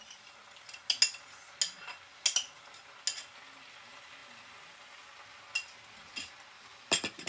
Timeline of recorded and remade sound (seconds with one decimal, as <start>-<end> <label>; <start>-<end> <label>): 0.0-7.3 recorded